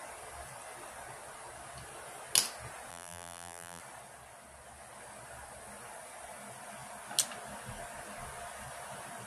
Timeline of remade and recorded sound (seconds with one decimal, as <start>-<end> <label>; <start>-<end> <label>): 0.0-2.9 recorded; 2.9-3.8 remade; 3.8-9.3 recorded